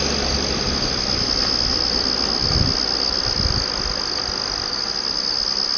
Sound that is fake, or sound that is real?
real